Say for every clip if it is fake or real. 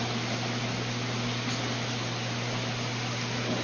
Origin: real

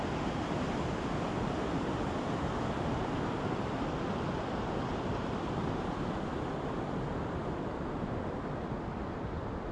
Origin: real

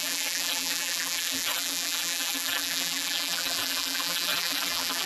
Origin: fake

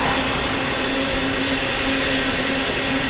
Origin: real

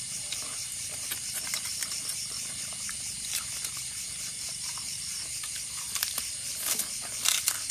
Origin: fake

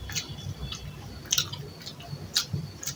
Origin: real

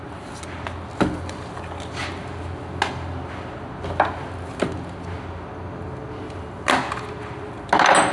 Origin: real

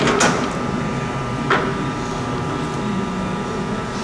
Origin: real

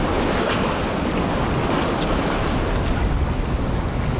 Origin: real